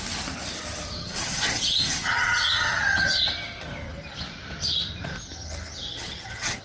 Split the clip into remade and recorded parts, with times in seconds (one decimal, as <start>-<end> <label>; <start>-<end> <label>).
0.0-1.0 recorded; 1.0-2.8 remade; 2.8-5.9 recorded; 5.9-6.6 remade